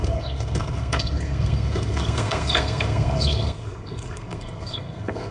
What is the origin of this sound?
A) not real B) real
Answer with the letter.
A